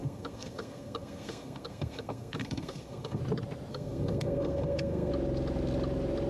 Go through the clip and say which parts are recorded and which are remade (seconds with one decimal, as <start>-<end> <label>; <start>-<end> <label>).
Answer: 0.0-3.2 remade; 3.2-3.7 recorded; 3.7-5.1 remade; 5.1-6.3 recorded